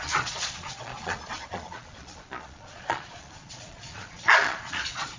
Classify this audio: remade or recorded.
remade